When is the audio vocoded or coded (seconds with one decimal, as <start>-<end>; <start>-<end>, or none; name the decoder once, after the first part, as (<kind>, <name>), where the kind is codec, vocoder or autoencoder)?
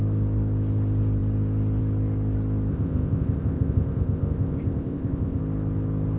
2.7-5.4 (codec, ZipCodec)